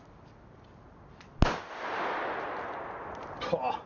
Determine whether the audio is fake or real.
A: real